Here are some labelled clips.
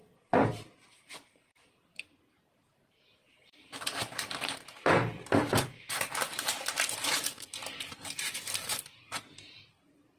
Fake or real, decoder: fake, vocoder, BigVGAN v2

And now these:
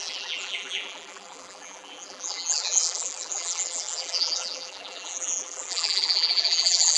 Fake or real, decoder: fake, vocoder, BigVGAN v2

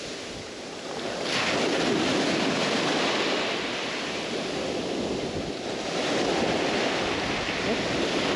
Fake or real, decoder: real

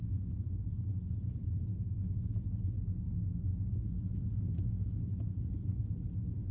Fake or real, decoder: real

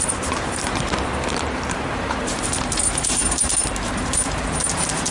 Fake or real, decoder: fake, vocoder, BigVGAN v2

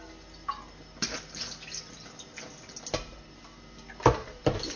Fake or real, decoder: real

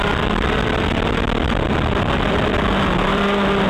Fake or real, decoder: fake, vocoder, BigVGAN v2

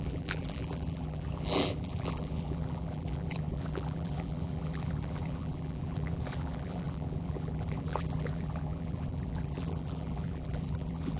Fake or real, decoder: fake, vocoder, BigVGAN v2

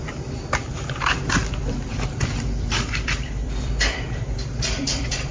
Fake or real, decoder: fake, vocoder, BigVGAN v2